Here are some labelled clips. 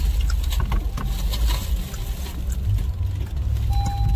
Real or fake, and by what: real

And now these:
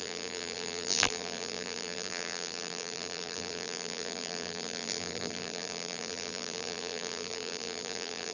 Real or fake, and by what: fake, vocoder, BigVGAN v2